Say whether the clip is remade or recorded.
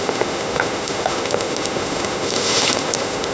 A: remade